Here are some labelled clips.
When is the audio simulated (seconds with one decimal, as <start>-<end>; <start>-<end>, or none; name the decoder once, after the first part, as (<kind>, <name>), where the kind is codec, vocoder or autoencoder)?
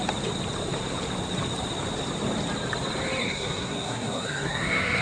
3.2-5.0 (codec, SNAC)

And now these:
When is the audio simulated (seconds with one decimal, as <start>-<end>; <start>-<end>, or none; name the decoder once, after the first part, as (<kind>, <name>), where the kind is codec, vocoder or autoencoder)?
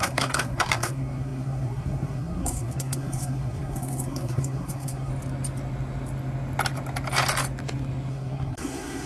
0.0-5.1 (codec, SNAC); 8.1-9.1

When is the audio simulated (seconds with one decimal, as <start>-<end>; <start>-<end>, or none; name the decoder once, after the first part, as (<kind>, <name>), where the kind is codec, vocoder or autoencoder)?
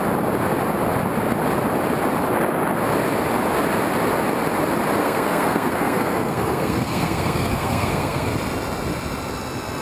5.0-8.3 (codec, SNAC)